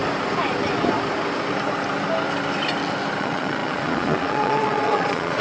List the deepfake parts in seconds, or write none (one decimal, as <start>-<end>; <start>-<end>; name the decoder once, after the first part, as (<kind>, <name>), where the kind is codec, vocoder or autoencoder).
3.2-5.4 (vocoder, Vocos)

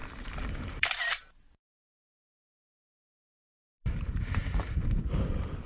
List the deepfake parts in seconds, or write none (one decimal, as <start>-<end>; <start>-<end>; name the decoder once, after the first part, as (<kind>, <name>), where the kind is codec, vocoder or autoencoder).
0.0-1.6 (vocoder, BigVGAN v2); 3.7-4.8

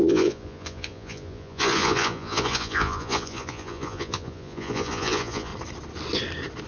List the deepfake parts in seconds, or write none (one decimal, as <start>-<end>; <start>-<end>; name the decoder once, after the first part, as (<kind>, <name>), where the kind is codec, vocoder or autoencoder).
0.0-5.5 (vocoder, Vocos)

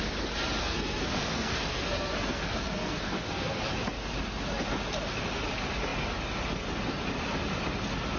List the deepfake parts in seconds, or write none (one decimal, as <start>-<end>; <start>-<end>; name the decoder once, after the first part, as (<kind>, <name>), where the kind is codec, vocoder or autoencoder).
0.6-3.6 (codec, SNAC)

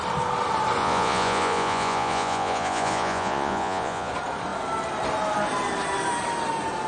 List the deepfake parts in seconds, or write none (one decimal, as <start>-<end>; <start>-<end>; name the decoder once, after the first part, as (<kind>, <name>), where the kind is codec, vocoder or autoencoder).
0.8-4.1 (vocoder, Vocos)